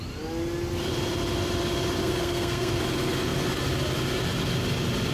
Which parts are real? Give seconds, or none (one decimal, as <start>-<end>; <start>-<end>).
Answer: 0.0-2.0; 2.8-5.1